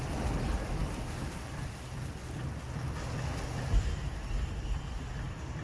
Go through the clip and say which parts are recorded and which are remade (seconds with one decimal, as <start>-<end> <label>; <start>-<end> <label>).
0.0-5.6 recorded